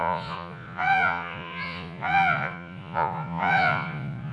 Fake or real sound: fake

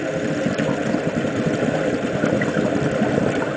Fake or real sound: real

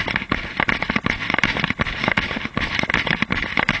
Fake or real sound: real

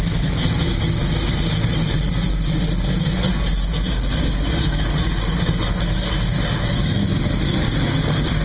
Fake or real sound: real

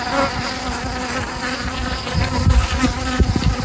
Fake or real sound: real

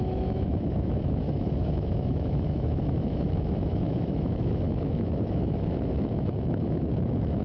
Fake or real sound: fake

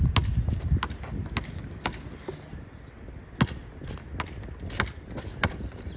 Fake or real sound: real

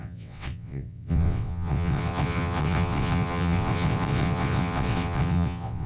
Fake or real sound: fake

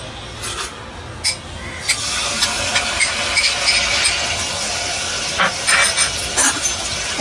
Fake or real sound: real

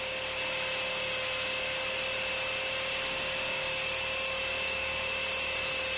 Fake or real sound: real